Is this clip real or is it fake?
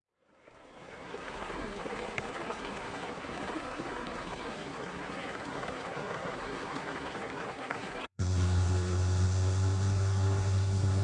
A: fake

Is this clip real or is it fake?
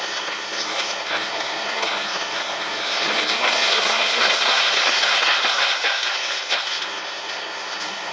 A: fake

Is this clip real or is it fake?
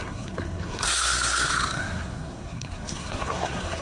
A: fake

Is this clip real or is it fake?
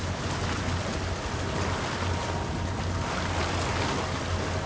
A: real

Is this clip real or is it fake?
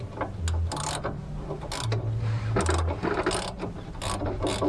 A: real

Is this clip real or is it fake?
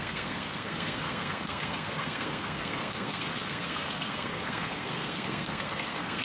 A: fake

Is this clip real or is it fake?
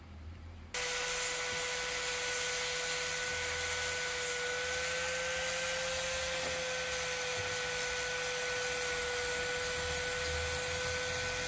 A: real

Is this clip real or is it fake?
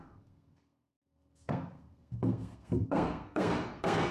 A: fake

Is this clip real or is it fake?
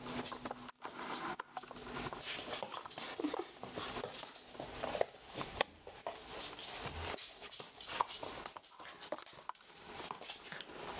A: real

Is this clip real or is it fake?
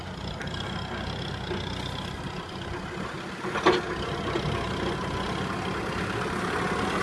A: real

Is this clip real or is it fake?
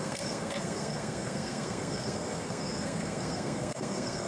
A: fake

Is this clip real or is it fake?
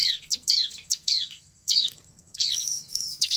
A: fake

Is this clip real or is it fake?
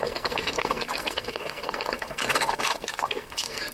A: fake